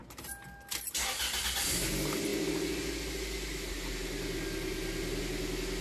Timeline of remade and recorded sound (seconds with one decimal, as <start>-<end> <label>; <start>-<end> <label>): 0.0-5.8 recorded